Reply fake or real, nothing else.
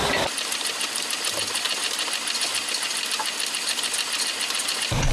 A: real